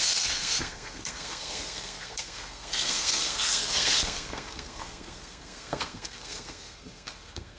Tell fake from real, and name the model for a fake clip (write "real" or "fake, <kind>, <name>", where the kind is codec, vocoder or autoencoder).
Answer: fake, codec, SNAC